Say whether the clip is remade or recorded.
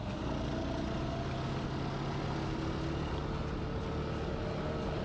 recorded